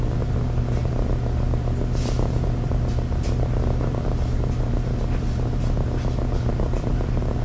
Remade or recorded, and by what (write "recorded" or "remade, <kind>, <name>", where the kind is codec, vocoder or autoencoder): recorded